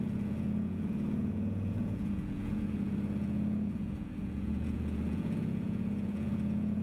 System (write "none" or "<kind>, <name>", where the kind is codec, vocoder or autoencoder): vocoder, Vocos